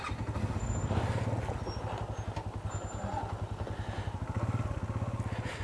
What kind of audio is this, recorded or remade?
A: recorded